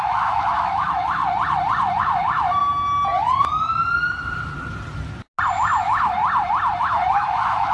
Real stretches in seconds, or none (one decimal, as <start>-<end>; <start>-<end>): 1.2-2.0; 2.6-5.5; 6.2-6.8